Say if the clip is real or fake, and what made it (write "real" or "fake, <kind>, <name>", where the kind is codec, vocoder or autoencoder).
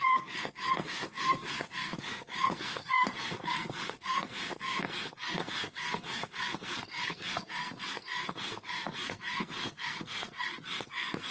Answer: fake, codec, SNAC